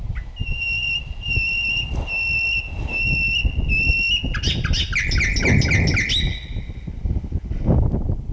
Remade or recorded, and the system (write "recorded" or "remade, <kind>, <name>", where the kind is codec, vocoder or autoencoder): recorded